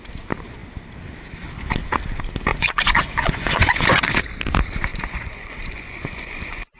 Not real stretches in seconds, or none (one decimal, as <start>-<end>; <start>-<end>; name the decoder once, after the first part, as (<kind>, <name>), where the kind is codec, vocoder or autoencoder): 2.5-4.2 (vocoder, Vocos); 4.9-6.8